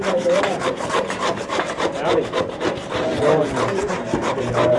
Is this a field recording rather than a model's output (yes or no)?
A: no